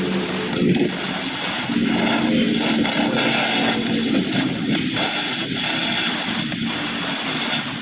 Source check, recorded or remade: recorded